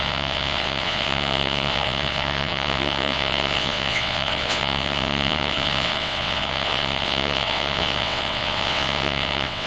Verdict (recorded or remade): remade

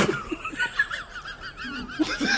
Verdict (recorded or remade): recorded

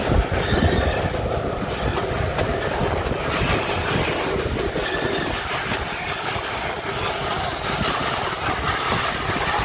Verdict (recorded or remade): recorded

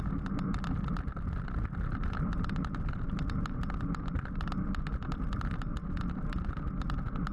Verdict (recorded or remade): recorded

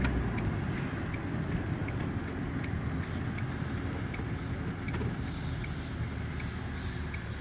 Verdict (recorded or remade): recorded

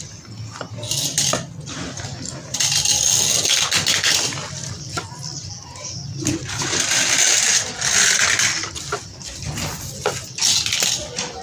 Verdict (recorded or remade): recorded